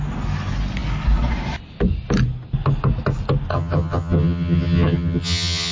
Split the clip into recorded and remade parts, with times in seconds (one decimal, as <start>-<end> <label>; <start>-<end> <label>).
0.0-3.5 recorded; 3.5-5.7 remade